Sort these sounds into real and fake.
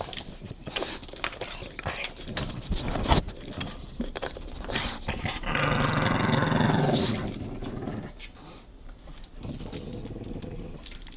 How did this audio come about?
real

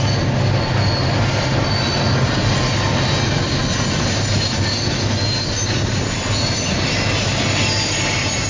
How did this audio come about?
real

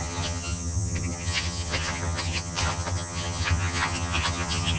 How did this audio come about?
fake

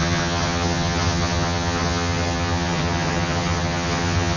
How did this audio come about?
fake